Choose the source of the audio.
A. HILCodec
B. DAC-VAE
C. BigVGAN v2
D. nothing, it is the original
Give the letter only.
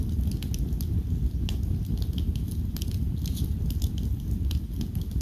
D